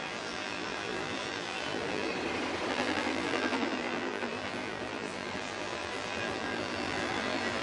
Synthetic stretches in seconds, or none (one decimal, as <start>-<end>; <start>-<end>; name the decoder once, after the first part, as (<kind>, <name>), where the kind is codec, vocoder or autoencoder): 0.0-2.1 (vocoder, BigVGAN v2); 2.7-7.6